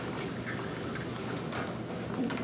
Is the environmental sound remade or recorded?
recorded